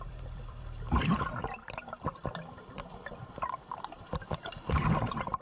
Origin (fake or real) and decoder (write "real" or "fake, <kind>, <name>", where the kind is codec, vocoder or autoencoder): fake, vocoder, BigVGAN v2